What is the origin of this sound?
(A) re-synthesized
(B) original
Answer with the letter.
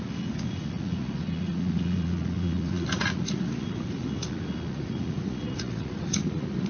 A